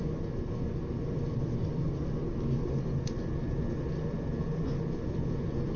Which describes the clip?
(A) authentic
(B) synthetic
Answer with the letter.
A